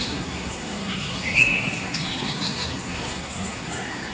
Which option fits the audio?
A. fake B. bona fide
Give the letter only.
A